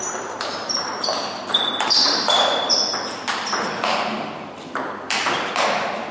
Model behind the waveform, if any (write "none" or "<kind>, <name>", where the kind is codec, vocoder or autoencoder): vocoder, BigVGAN v2